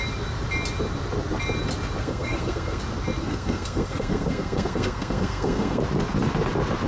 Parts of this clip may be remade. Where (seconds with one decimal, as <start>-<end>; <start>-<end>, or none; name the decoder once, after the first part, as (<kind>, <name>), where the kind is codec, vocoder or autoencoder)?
2.0-2.8 (codec, SNAC); 3.2-5.8